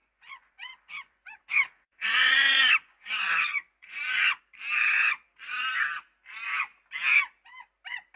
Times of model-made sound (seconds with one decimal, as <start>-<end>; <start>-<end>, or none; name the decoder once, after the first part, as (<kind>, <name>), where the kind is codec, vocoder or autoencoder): 0.0-4.4 (vocoder, Vocos)